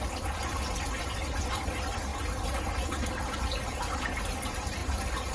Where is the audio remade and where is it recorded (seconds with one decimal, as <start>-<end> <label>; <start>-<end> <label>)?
0.0-2.1 remade; 2.1-3.3 recorded; 3.3-4.8 remade; 4.8-5.3 recorded